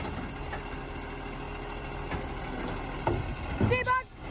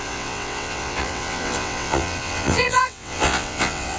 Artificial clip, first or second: second